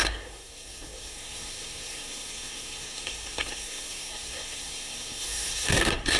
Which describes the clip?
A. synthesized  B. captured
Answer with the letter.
A